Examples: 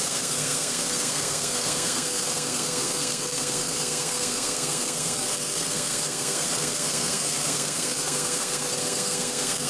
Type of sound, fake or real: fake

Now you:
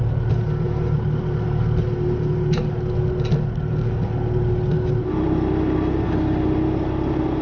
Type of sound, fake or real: real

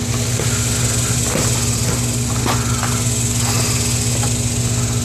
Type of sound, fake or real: real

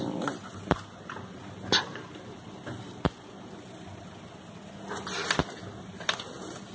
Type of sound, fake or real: real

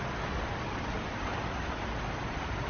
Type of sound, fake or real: real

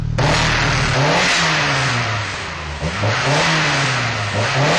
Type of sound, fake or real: real